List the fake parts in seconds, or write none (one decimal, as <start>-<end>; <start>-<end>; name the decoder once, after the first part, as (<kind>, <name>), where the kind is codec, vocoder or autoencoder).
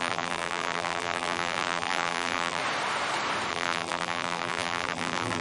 0.0-2.6 (vocoder, BigVGAN v2); 3.5-5.4